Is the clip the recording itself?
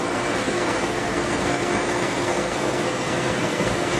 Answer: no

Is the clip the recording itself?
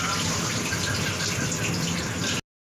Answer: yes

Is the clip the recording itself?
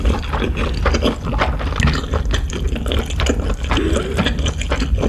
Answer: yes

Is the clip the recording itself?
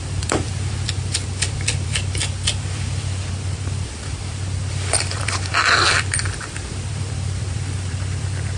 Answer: no